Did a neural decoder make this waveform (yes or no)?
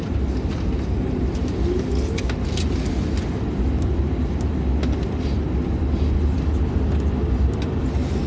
no